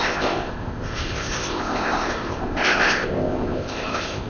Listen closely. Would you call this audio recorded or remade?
remade